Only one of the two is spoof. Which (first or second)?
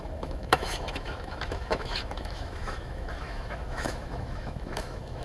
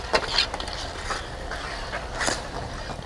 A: first